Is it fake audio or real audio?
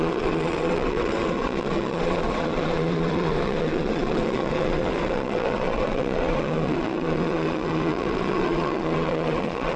fake